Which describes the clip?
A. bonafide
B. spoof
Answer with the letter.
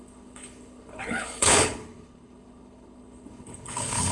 B